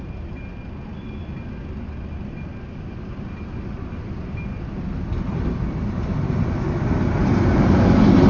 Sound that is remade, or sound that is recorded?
recorded